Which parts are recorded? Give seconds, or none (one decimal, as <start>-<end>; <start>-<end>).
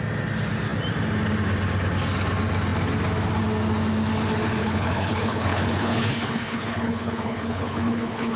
0.0-4.6